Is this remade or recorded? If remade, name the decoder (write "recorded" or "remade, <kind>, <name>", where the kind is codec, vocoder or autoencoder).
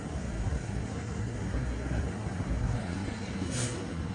remade, codec, SNAC